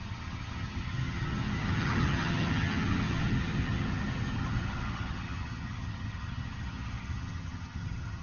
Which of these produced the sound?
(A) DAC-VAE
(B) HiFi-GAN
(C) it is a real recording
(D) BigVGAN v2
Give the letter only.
B